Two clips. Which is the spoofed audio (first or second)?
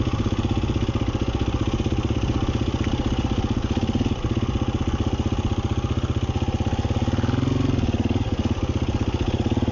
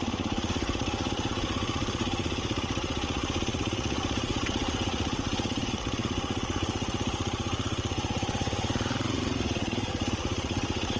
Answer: second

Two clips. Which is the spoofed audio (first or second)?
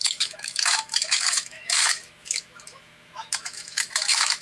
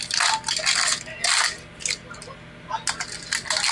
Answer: first